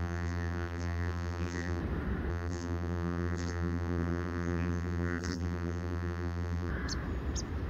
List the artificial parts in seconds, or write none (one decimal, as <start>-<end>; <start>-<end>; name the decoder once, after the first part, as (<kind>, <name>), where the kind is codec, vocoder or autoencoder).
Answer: 0.0-1.8 (vocoder, BigVGAN v2); 2.3-6.7